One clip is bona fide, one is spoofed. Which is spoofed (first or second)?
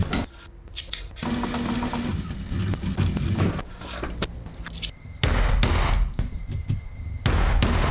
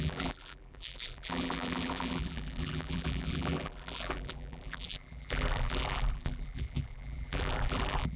second